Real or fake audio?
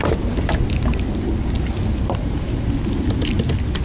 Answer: real